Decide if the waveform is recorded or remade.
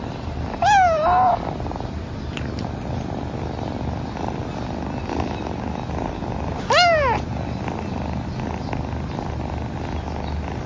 recorded